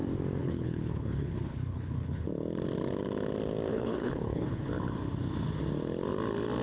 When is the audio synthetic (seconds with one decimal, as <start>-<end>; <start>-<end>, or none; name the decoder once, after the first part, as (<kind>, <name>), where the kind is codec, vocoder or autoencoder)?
0.4-2.3 (codec, HILCodec); 3.7-4.7